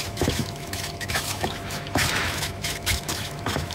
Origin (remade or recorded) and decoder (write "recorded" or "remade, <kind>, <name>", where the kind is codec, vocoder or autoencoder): remade, autoencoder, DAC-VAE